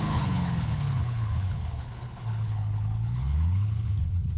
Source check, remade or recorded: remade